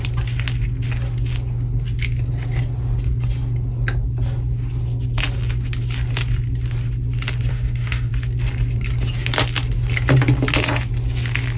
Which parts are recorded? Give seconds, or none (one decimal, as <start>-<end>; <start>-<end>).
0.0-7.5; 8.1-11.6